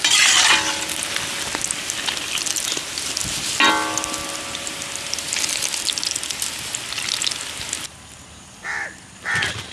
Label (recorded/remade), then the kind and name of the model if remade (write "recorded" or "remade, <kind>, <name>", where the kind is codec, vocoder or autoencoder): recorded